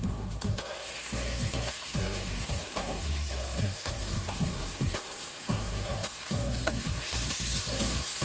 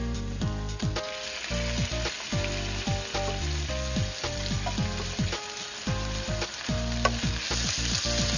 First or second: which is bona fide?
second